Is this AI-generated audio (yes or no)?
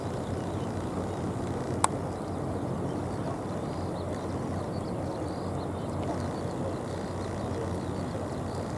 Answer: no